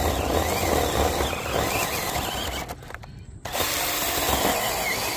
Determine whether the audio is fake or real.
real